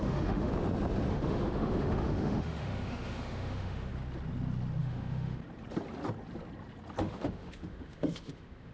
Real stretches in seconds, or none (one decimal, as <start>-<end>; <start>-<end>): 0.5-1.1; 3.9-4.8; 5.4-7.0